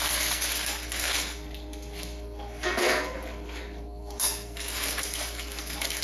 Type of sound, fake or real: fake